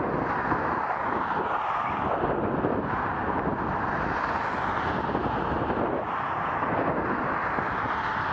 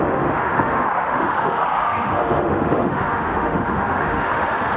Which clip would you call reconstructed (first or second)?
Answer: second